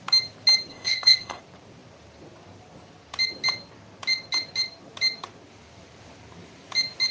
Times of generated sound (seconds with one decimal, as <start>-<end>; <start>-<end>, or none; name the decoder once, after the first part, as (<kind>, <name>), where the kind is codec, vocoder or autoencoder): 0.7-1.4 (codec, ZipCodec)